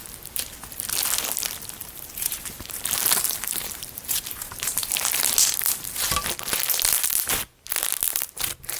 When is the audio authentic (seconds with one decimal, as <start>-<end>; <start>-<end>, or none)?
0.0-1.8; 5.0-8.8